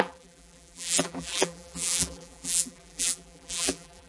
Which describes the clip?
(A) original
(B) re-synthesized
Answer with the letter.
B